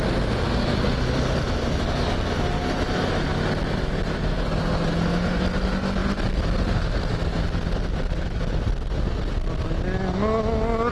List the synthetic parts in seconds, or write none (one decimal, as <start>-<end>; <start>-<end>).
none